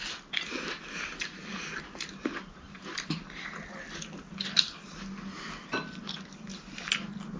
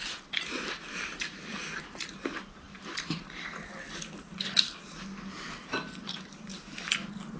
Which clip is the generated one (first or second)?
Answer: second